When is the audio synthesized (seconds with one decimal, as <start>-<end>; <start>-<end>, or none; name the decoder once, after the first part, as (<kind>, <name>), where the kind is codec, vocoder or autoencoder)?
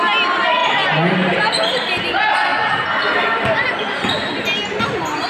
none